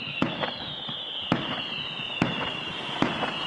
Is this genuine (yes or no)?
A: yes